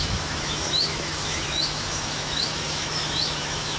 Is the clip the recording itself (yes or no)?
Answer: no